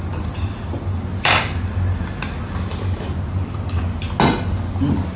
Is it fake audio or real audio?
real